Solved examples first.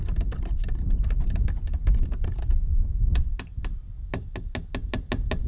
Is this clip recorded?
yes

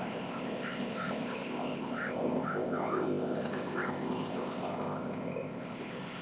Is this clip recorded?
no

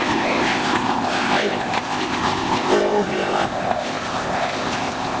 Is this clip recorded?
no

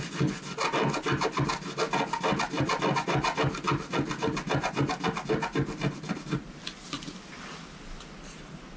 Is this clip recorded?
yes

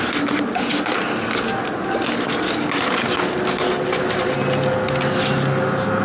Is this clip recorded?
yes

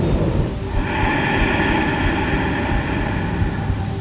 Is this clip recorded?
yes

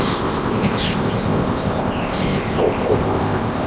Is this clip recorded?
no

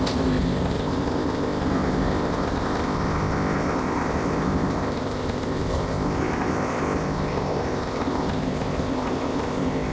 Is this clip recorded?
no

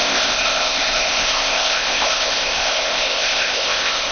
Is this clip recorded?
no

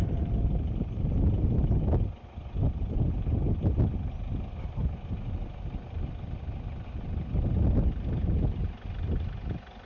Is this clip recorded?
yes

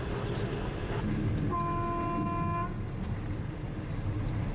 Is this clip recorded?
yes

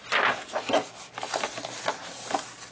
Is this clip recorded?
yes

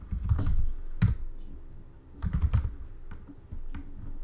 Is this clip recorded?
yes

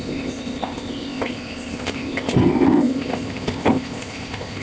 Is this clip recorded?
no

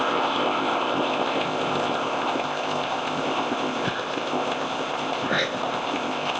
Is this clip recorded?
no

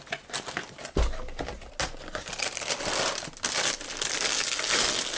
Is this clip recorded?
yes